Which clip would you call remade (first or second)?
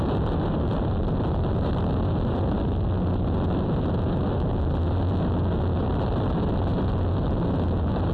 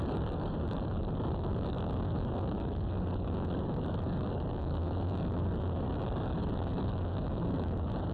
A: second